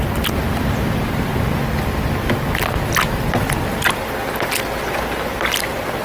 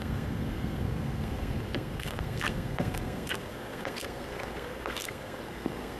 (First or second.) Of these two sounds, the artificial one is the second